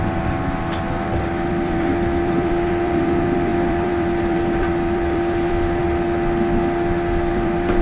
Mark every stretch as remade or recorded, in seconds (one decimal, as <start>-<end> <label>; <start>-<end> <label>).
0.0-5.8 remade; 5.8-7.3 recorded; 7.3-7.8 remade